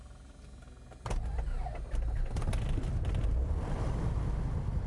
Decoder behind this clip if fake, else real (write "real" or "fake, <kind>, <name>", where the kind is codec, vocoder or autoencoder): real